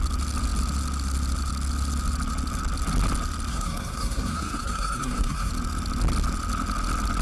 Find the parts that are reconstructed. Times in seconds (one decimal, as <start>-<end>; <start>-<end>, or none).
3.5-5.5